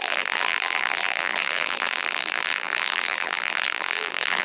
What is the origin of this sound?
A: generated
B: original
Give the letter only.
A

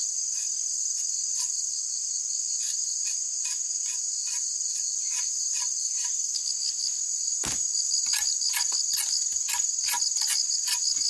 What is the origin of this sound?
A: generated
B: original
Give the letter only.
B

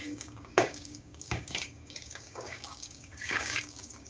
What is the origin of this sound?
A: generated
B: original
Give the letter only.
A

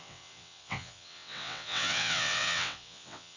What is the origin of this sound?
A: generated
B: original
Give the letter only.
A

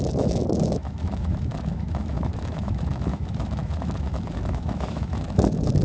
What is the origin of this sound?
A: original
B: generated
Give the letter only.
B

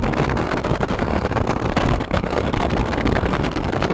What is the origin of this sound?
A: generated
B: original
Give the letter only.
A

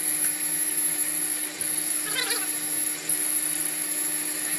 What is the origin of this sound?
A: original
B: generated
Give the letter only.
A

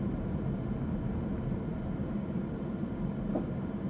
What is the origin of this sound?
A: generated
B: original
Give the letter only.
B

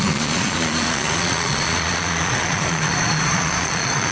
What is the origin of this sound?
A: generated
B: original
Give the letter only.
A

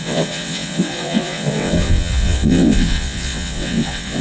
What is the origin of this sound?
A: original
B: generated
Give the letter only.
B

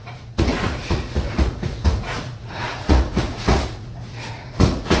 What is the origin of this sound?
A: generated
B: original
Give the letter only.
A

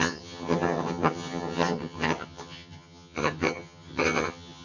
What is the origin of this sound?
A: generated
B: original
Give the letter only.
A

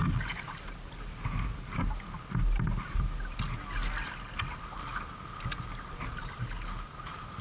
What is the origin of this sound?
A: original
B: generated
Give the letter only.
A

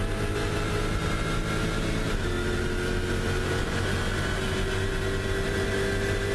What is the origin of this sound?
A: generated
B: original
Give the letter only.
B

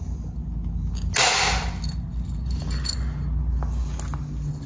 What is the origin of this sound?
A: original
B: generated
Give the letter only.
A